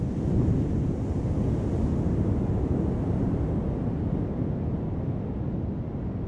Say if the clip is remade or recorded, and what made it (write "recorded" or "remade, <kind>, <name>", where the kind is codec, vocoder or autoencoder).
recorded